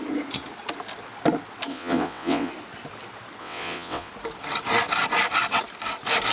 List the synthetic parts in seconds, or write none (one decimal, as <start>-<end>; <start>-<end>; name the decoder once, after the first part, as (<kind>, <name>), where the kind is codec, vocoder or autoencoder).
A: 1.7-2.5 (vocoder, WaveNeXt); 3.4-4.1